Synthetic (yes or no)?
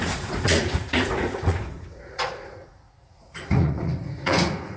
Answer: yes